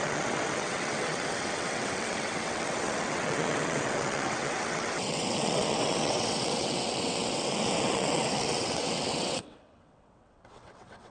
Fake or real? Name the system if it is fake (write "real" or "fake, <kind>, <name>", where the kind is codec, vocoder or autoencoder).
fake, vocoder, WaveNeXt